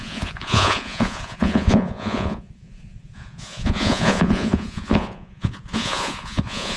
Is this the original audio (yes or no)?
no